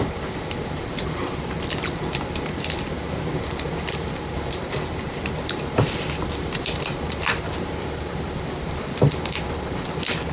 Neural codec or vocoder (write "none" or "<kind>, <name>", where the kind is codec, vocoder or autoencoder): vocoder, BigVGAN v2